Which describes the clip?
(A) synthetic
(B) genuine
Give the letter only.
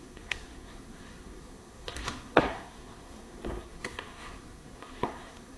A